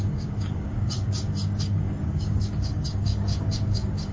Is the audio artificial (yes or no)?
yes